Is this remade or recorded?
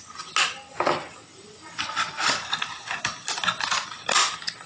recorded